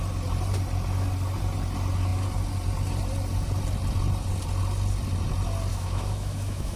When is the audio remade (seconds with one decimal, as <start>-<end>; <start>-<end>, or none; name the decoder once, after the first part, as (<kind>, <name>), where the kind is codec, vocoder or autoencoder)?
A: 5.7-6.8 (autoencoder, DAC-VAE)

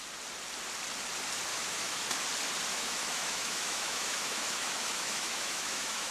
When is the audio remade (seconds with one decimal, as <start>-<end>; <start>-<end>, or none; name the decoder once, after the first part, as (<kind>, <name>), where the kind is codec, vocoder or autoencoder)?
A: 1.5-2.0 (autoencoder, DAC-VAE); 2.7-6.1

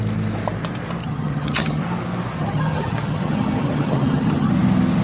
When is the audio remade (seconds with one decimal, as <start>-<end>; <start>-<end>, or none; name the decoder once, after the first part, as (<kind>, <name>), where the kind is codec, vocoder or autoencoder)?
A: 1.0-1.8 (vocoder, HiFi-GAN); 2.3-4.5

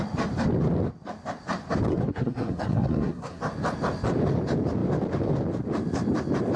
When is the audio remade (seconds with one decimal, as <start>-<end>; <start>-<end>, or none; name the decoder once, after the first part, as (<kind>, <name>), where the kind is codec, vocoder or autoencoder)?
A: 1.9-3.4 (codec, SNAC)